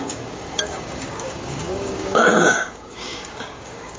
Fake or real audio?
fake